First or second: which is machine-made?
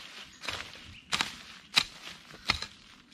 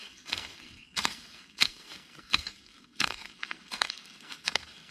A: second